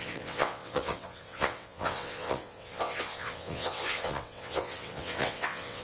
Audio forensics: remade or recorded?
remade